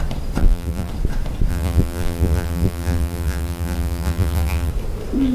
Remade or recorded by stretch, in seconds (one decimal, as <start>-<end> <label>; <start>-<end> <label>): 0.0-0.4 recorded; 0.4-0.9 remade; 0.9-1.5 recorded; 1.5-4.7 remade; 4.7-5.3 recorded